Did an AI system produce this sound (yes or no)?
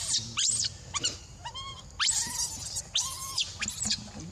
no